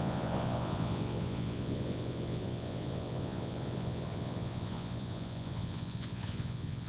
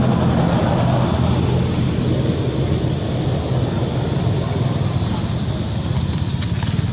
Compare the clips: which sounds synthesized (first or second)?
first